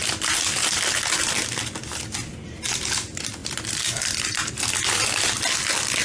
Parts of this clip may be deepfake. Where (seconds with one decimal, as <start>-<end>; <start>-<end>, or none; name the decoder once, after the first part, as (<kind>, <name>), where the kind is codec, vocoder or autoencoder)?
3.4-4.5 (vocoder, BigVGAN v2)